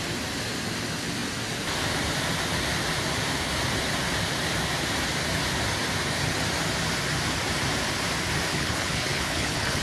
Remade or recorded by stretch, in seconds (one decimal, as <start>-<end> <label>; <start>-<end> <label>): 0.0-8.5 recorded; 8.5-9.8 remade